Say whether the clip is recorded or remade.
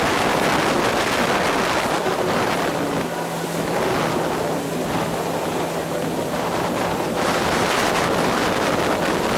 recorded